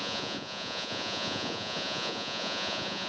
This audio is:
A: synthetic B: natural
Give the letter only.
A